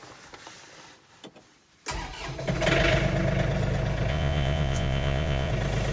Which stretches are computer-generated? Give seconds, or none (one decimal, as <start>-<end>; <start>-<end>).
4.1-5.5